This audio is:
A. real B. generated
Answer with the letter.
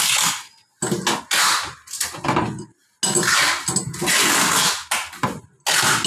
A